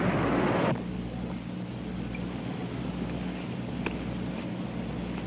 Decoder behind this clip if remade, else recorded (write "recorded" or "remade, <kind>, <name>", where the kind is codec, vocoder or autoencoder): recorded